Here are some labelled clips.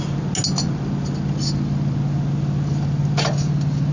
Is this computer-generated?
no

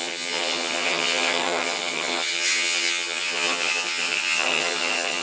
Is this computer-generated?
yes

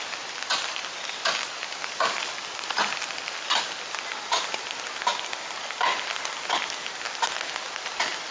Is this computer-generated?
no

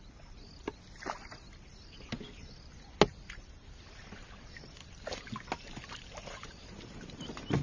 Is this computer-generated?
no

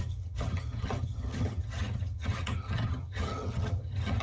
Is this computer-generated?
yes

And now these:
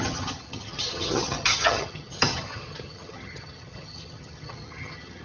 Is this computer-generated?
yes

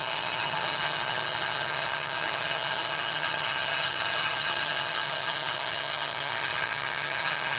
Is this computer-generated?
yes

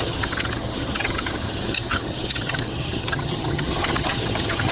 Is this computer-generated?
yes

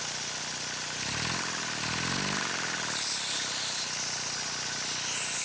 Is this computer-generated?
no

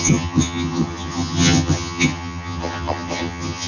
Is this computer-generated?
yes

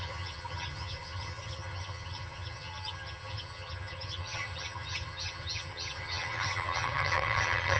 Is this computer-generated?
yes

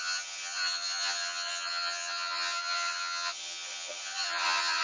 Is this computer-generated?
yes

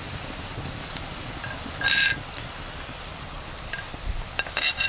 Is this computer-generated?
no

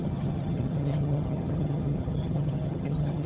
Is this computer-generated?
yes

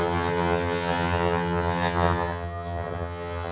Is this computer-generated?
yes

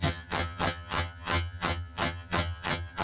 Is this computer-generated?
yes